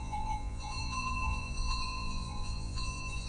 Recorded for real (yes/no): no